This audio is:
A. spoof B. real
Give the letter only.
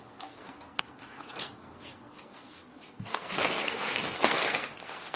A